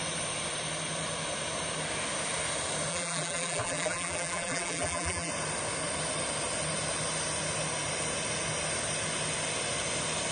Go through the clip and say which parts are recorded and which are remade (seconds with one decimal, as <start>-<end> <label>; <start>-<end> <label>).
0.0-2.9 recorded; 2.9-5.3 remade; 5.3-10.3 recorded